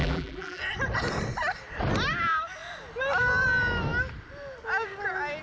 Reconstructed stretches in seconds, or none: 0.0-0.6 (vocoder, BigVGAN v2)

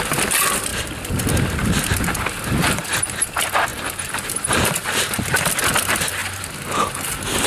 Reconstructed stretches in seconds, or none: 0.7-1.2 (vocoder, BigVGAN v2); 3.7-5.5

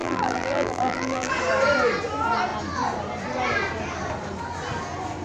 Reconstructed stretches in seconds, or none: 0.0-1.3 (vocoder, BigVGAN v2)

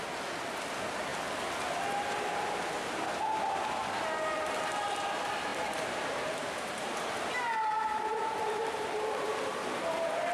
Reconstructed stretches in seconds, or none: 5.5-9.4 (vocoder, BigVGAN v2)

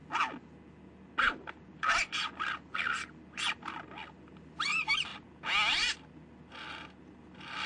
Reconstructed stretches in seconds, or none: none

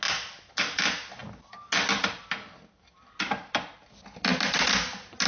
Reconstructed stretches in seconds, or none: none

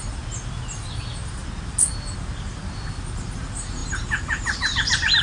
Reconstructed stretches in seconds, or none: none